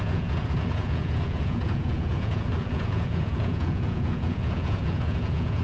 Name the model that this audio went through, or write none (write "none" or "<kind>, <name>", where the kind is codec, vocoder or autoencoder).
vocoder, Vocos